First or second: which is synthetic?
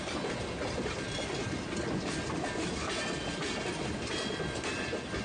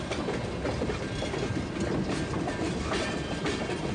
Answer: second